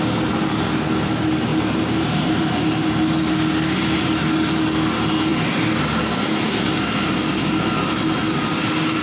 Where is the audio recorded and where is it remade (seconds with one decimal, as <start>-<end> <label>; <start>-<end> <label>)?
0.0-1.5 recorded; 1.5-2.9 remade; 2.9-9.0 recorded